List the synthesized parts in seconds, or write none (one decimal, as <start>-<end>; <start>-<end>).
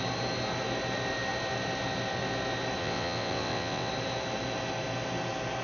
2.8-3.9